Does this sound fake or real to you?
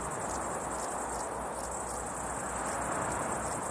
real